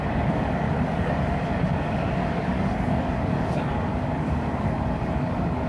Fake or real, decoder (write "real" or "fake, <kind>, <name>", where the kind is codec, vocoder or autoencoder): fake, codec, DAC